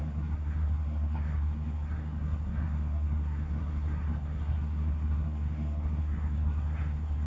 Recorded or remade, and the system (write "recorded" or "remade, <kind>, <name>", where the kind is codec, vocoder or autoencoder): remade, codec, SNAC